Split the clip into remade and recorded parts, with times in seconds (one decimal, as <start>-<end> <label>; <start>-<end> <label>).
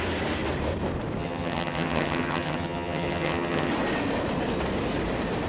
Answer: 0.0-1.2 recorded; 1.2-3.7 remade; 3.7-5.5 recorded